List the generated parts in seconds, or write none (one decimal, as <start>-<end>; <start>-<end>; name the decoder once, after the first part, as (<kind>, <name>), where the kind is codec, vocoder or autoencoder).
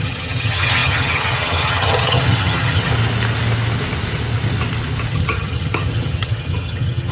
0.0-2.9 (vocoder, HiFi-GAN); 5.1-7.1